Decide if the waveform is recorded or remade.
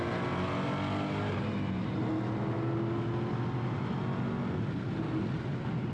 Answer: recorded